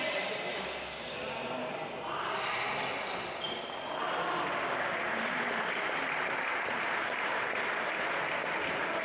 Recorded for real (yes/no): yes